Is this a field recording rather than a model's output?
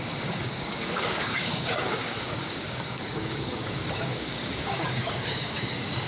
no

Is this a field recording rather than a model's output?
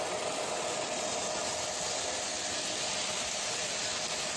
yes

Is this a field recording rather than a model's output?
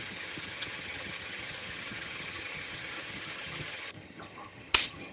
no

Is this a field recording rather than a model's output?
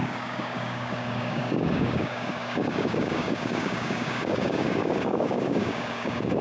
no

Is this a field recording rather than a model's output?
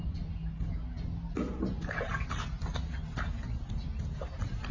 yes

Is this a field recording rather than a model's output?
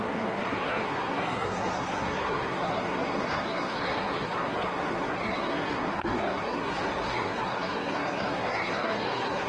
no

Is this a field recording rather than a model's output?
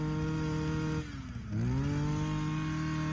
yes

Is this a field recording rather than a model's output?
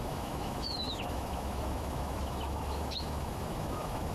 no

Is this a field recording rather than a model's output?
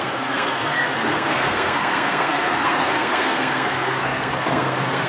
no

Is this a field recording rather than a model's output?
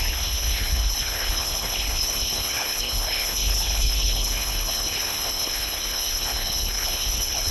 no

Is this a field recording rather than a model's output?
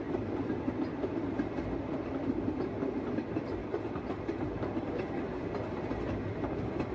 yes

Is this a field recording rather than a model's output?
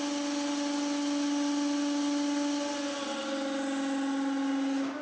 yes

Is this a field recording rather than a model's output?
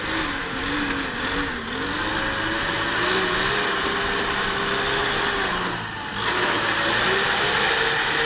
yes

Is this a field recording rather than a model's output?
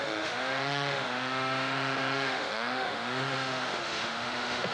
no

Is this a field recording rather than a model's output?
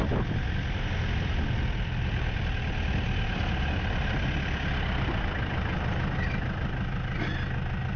yes